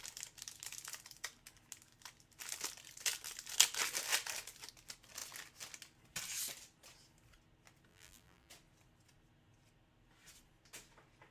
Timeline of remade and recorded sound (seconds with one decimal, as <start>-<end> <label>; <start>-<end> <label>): 0.0-7.9 recorded; 7.9-8.5 remade; 8.5-11.3 recorded